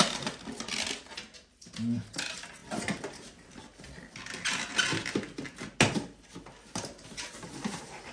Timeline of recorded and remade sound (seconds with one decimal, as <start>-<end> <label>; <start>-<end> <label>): 0.0-8.1 recorded